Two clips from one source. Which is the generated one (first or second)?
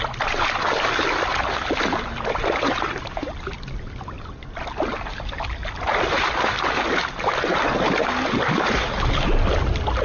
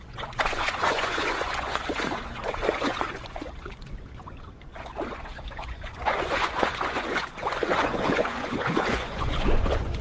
second